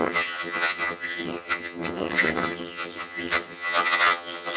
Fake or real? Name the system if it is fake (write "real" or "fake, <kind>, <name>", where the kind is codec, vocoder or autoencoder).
fake, vocoder, HiFi-GAN